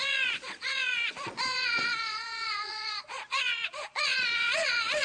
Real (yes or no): no